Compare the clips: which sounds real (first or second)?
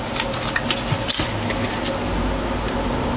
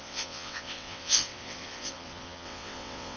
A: first